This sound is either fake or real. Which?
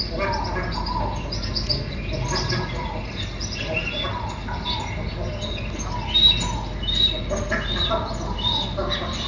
real